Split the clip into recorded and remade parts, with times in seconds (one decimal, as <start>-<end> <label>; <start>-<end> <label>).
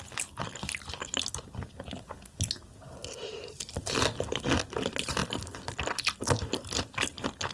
0.0-7.5 recorded